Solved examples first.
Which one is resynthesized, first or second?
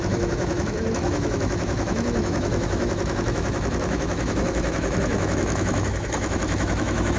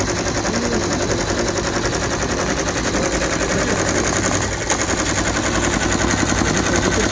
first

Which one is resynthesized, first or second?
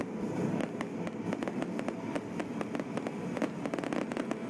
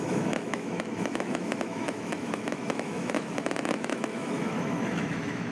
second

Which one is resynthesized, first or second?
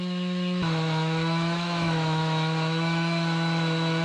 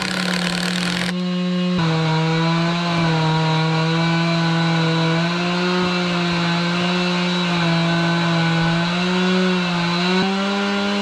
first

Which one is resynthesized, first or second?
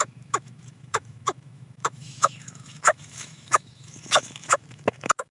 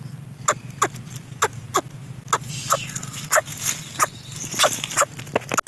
first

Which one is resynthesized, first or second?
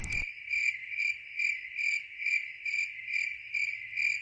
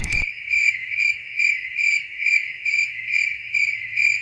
second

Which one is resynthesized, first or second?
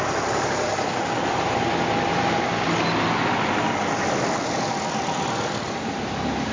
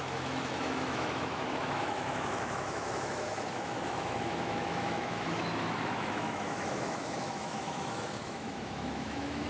second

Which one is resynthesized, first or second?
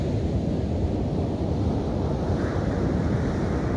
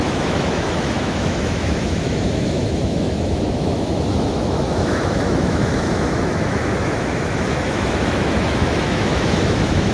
second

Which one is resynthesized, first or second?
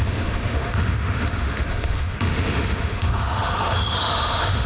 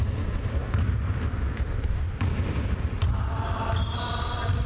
first